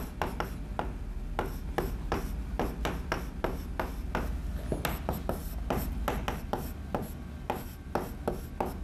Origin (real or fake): real